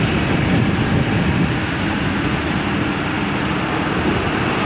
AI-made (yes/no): no